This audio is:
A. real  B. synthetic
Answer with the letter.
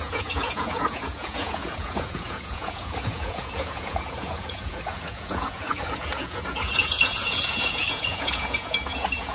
B